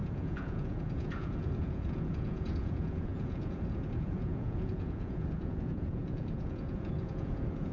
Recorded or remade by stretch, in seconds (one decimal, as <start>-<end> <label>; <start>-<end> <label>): 0.0-7.7 remade